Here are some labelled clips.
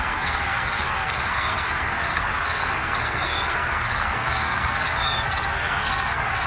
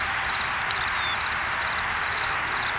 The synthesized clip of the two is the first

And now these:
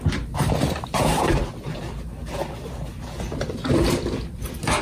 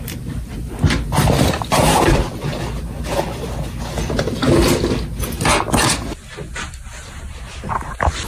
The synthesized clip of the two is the first